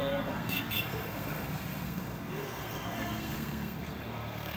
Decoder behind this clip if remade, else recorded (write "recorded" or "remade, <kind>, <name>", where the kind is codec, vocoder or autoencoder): remade, codec, SNAC